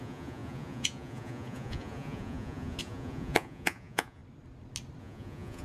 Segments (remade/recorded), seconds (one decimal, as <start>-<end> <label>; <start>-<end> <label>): 0.0-4.2 remade; 4.2-5.0 recorded; 5.0-5.6 remade